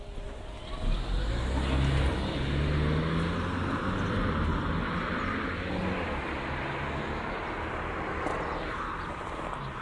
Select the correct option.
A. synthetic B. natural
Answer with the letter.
B